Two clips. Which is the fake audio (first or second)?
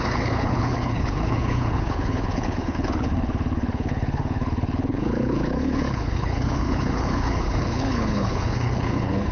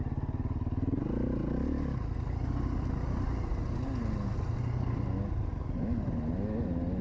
first